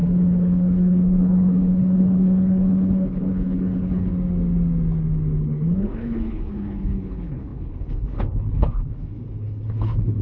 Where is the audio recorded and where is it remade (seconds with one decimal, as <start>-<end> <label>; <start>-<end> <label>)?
0.0-4.1 remade; 4.1-5.4 recorded; 5.4-10.2 remade